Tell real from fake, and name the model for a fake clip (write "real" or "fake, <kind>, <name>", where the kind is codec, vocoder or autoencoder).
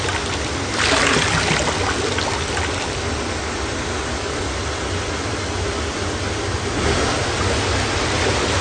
real